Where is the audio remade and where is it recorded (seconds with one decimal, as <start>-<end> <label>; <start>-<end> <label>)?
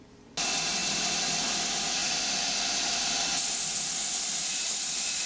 0.0-5.3 recorded